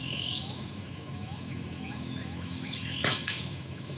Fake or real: fake